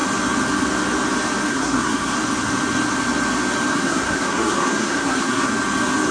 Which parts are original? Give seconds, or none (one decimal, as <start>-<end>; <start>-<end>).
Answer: 0.0-1.5; 2.1-3.7; 5.5-6.1